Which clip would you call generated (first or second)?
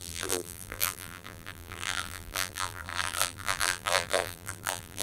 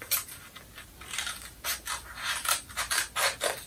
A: first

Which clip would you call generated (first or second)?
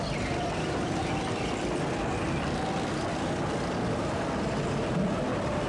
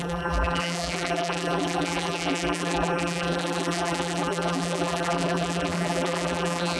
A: second